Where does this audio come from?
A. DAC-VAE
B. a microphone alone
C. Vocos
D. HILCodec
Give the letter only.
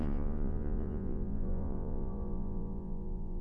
C